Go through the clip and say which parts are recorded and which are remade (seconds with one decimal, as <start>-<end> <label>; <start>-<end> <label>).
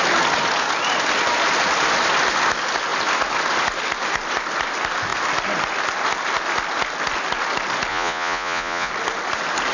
0.0-7.9 recorded; 7.9-8.9 remade; 8.9-9.7 recorded